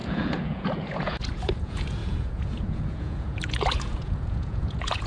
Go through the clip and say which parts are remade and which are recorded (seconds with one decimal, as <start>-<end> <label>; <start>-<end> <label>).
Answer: 0.0-5.1 remade